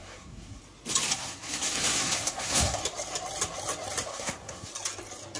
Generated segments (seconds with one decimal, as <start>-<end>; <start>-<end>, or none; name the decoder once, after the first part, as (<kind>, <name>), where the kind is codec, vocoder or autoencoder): 0.0-0.6 (codec, SNAC); 1.1-2.8; 4.1-4.7